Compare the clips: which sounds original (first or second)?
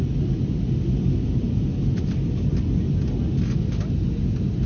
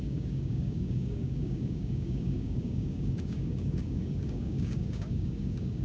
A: first